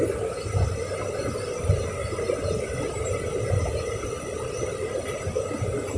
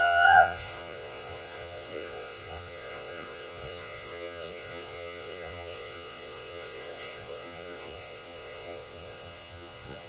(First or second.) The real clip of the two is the first